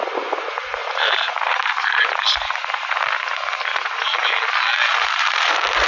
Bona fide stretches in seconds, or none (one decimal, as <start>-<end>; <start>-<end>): 0.0-0.8; 4.3-4.9